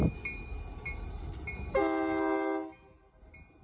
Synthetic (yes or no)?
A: no